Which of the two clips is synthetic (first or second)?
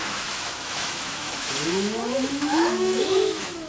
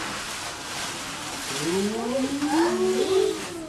first